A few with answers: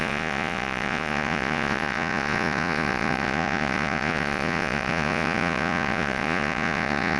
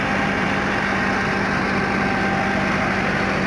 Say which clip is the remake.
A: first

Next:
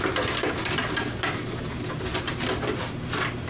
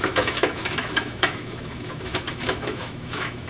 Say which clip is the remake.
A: second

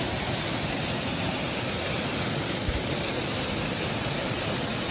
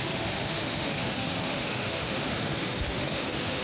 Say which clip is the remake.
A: second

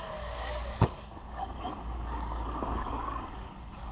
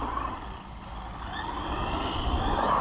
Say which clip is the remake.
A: first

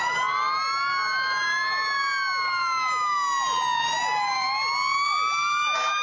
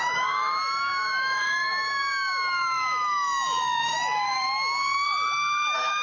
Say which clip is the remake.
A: second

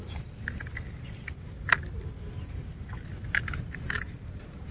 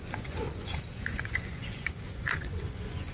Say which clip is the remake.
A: second